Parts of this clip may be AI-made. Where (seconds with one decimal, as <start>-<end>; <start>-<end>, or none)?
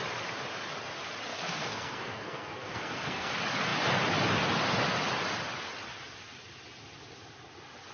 1.3-3.3